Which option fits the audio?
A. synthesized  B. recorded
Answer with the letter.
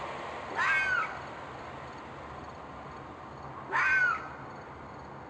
B